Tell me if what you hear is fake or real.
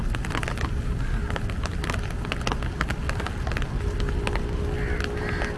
real